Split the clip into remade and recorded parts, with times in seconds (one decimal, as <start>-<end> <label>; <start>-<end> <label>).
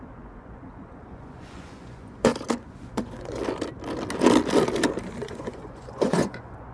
0.0-2.3 remade; 2.3-2.8 recorded; 2.8-3.4 remade; 3.4-5.2 recorded; 5.2-6.7 remade